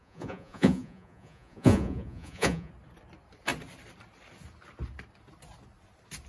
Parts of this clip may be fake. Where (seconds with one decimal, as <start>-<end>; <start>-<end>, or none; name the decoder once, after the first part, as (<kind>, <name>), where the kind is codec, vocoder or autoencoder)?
0.0-2.7 (vocoder, Vocos)